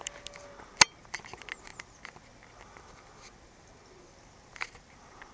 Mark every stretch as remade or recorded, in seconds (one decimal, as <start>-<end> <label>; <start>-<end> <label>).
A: 0.0-5.3 recorded